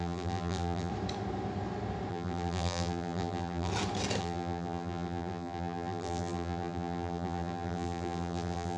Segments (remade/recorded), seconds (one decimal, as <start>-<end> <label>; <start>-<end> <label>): 0.0-0.9 remade; 0.9-2.1 recorded; 2.1-3.7 remade; 3.7-4.2 recorded; 4.2-8.8 remade